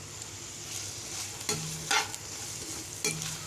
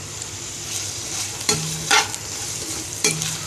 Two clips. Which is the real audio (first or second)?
first